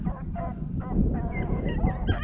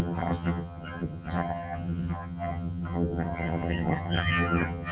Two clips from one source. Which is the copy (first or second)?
second